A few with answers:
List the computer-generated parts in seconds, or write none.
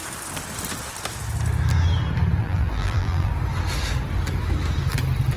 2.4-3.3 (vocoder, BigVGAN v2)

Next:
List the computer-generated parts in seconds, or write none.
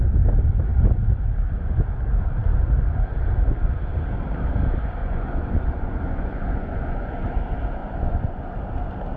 5.0-7.1 (vocoder, Vocos); 7.8-8.4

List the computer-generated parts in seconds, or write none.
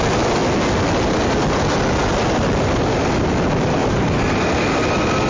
3.8-4.4 (vocoder, BigVGAN v2)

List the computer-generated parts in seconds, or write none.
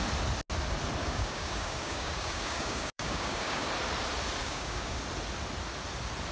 1.0-3.7 (codec, DAC); 4.4-5.0